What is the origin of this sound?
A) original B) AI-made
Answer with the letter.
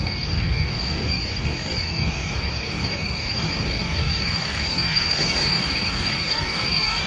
B